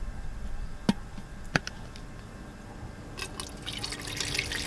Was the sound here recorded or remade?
recorded